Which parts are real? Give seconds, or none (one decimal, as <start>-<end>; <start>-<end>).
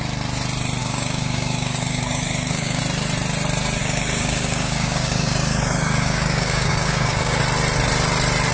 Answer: 0.0-0.8; 2.8-3.8; 7.4-8.5